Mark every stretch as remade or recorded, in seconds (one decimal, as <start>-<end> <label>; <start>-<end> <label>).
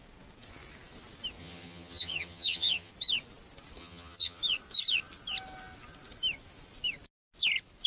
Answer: 0.0-1.4 recorded; 1.4-2.9 remade; 2.9-3.8 recorded; 3.8-4.4 remade; 4.4-7.9 recorded